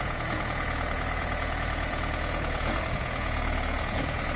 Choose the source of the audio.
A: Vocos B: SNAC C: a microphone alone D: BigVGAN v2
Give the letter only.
A